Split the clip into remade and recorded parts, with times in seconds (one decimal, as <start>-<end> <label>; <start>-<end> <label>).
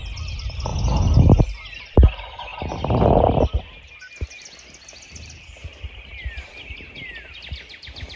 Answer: 0.0-8.2 recorded